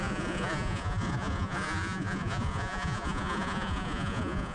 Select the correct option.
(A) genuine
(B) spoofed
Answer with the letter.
B